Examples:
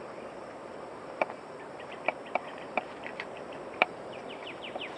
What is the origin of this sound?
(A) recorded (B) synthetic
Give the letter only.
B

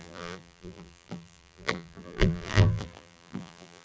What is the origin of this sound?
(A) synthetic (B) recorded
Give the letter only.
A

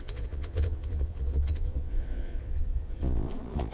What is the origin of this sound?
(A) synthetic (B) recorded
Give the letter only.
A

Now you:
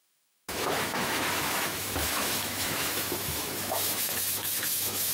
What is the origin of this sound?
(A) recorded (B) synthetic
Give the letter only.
B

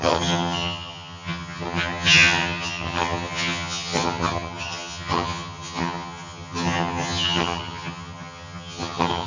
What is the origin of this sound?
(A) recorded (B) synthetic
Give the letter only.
B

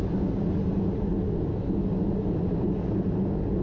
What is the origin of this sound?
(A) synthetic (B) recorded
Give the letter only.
B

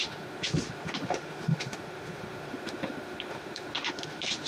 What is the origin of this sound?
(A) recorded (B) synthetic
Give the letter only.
B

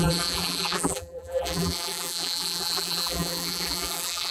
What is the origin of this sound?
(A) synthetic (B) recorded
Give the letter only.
A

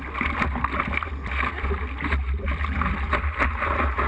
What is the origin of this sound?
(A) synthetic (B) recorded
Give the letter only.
B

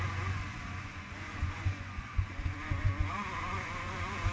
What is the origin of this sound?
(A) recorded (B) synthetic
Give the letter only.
B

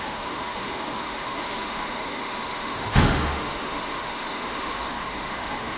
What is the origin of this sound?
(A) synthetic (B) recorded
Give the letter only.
A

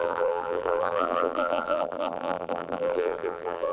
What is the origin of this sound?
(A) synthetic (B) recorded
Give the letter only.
A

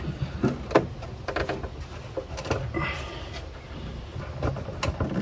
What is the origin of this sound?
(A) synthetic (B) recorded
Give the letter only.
B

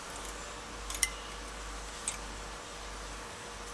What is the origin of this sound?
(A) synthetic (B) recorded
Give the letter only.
B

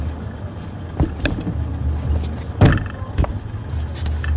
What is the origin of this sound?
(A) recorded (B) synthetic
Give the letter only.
A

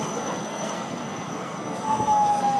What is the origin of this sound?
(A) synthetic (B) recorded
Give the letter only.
A